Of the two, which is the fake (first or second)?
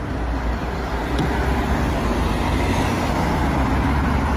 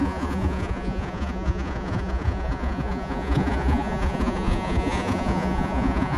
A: second